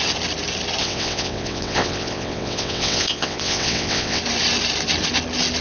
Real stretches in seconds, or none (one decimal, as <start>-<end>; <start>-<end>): 0.0-0.8; 4.2-5.6